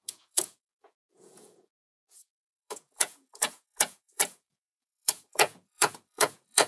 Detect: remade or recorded remade